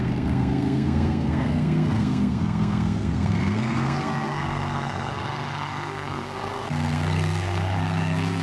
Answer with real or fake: fake